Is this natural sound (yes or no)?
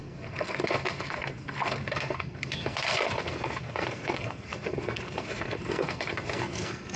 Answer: no